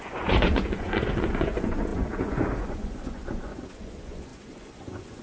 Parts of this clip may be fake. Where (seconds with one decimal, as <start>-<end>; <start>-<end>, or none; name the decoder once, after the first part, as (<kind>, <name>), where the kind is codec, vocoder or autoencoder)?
0.0-5.2 (vocoder, Vocos)

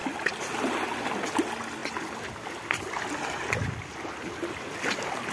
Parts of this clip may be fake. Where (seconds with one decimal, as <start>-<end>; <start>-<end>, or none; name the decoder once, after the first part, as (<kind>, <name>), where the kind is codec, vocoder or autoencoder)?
none

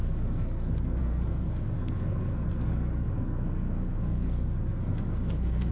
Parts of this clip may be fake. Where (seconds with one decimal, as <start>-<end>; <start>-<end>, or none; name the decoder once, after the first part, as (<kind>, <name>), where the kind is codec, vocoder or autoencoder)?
0.0-5.7 (codec, SNAC)

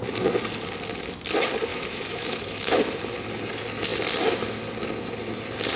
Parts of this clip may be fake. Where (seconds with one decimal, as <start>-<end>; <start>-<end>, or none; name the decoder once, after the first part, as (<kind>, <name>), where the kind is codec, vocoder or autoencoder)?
1.7-2.8 (autoencoder, DAC-VAE)

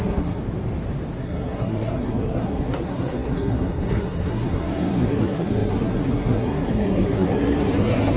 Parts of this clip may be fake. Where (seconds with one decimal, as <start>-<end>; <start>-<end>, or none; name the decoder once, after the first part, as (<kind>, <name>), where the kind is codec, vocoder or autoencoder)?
0.0-0.4 (codec, SNAC); 1.2-8.2

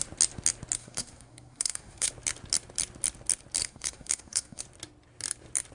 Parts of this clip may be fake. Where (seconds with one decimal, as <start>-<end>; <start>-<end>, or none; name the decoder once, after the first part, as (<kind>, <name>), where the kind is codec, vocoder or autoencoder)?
0.8-2.1 (codec, SNAC); 3.6-4.6

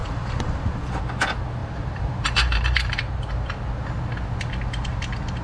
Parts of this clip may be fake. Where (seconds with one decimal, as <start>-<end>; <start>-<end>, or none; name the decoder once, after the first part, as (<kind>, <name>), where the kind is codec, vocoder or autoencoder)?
0.0-1.0 (vocoder, BigVGAN v2); 1.6-3.3